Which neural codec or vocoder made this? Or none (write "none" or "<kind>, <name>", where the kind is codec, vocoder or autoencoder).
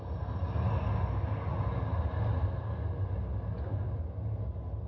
none